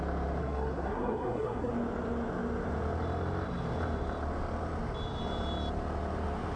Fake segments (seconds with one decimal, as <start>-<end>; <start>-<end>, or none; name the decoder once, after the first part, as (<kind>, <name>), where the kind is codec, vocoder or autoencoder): 0.4-1.7 (codec, SNAC)